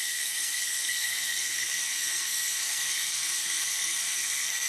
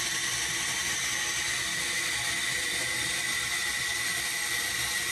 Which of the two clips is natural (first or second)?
second